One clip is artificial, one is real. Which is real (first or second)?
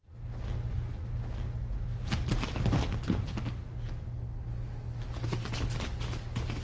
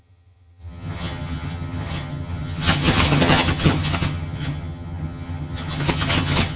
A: first